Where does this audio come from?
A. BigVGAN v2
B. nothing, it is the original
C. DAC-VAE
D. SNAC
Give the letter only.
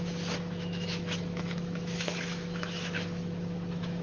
C